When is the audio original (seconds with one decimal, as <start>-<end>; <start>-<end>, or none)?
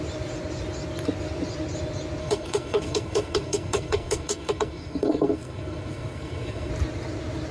0.0-2.2; 6.7-7.5